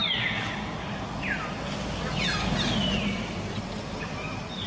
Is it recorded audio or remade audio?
recorded